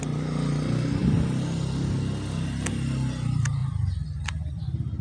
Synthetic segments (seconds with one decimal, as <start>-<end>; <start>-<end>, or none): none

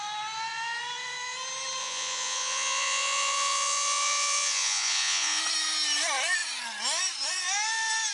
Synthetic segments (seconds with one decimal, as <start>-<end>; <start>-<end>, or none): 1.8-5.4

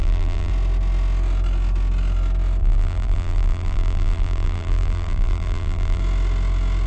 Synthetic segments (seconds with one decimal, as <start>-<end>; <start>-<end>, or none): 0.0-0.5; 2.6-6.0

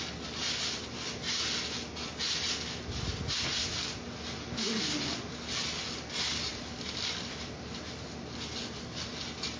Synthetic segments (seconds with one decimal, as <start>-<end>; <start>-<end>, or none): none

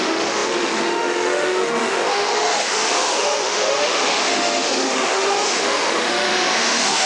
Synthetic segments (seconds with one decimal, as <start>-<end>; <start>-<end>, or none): 0.0-7.1

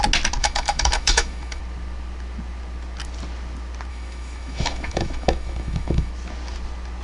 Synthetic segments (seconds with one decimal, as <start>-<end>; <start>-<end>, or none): 0.4-1.6; 3.9-6.1

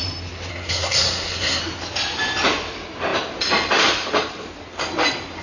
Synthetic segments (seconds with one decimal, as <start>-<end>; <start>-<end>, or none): 0.5-1.6

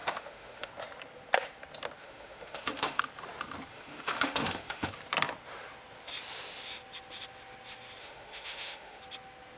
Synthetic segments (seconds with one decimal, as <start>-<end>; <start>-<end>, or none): 0.0-0.7; 2.0-3.0; 3.7-4.9; 8.0-9.0